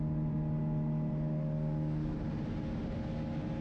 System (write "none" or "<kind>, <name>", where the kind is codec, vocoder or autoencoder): none